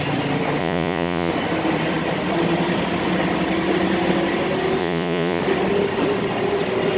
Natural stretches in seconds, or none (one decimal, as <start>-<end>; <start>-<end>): 0.0-0.6; 1.3-4.8; 5.4-7.0